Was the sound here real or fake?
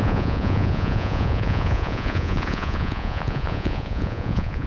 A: fake